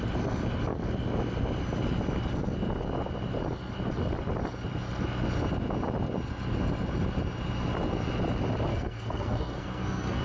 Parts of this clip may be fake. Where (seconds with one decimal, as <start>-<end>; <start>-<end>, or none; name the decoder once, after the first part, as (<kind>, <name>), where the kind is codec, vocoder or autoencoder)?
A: 8.7-10.2 (codec, SNAC)